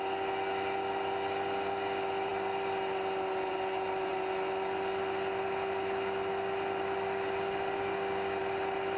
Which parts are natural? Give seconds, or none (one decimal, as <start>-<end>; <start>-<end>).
0.0-9.0